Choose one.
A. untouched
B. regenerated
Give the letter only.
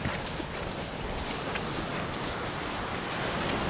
A